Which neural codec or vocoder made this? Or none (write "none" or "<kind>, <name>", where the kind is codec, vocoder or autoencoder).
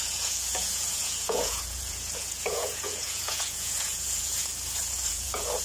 vocoder, Vocos